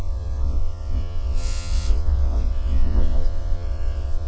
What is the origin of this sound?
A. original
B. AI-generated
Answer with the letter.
B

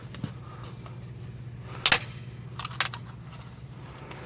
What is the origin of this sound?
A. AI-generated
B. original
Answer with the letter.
B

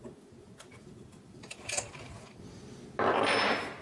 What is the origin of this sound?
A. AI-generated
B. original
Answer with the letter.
B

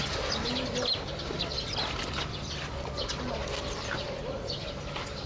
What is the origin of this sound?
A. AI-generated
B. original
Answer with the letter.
B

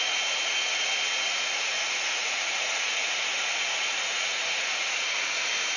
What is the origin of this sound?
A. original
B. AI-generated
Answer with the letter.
B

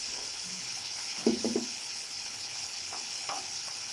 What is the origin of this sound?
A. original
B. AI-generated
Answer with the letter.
B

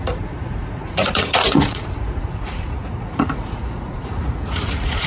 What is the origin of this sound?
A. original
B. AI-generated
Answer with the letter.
B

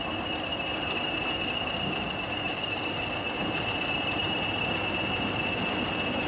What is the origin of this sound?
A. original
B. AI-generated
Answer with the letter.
A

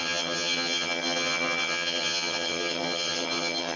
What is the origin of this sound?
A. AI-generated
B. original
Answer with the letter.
A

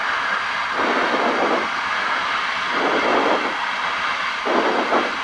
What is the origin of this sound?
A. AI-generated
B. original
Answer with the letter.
B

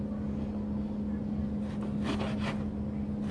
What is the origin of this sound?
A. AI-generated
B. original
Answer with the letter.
B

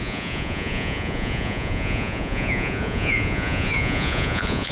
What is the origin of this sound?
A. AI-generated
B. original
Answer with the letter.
A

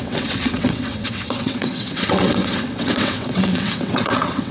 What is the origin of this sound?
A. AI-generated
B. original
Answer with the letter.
A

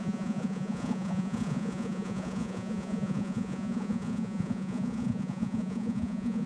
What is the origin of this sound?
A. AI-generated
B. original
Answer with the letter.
A